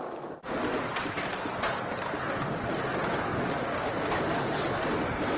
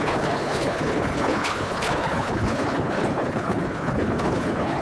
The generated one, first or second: second